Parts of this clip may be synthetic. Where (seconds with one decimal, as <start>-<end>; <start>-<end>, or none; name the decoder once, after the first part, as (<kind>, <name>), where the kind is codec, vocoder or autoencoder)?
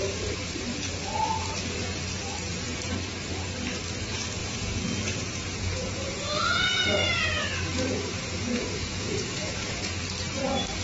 4.4-7.1 (vocoder, Vocos); 7.7-9.9